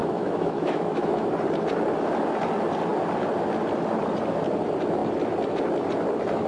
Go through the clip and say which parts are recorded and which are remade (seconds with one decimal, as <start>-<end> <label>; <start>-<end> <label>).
0.0-1.3 remade; 1.3-6.5 recorded